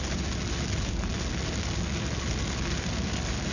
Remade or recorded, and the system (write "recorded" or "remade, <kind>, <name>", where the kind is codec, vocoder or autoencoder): recorded